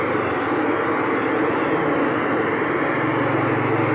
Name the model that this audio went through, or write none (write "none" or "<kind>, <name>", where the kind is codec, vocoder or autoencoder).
none